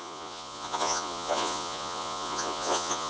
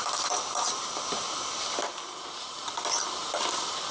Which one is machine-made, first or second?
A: first